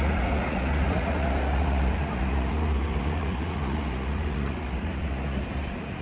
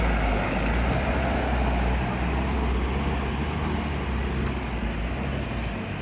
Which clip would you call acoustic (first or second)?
second